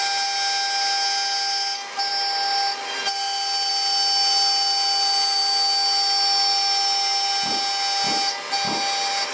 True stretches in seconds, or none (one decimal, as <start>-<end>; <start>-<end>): 0.0-9.3

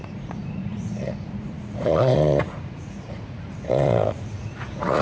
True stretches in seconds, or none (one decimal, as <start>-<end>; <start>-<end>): none

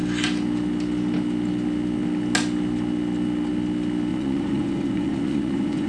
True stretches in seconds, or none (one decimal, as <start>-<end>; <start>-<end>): 0.0-4.1

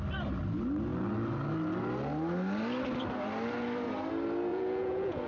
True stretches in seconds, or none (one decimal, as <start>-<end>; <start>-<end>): 0.0-4.5

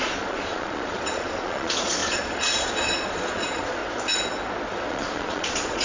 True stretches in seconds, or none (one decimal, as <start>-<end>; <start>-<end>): 3.8-4.9

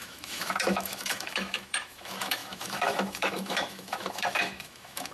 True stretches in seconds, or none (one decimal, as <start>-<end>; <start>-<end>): none

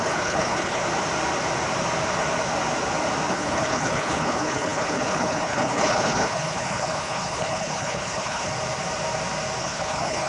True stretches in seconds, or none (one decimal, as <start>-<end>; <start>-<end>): 0.8-3.3; 8.5-9.6